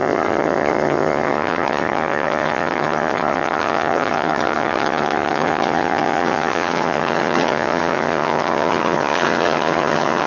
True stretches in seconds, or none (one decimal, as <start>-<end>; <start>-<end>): none